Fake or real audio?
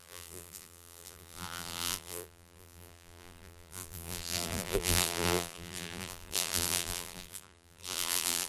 fake